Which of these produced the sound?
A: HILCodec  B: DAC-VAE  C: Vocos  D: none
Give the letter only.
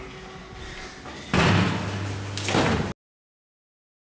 D